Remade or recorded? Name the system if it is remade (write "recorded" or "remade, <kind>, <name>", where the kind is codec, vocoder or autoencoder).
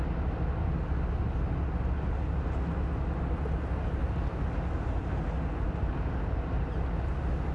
recorded